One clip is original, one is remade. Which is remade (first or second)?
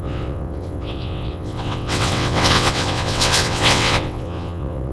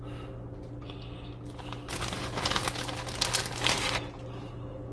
first